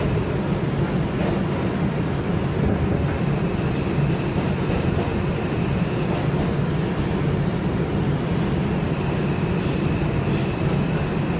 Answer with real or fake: real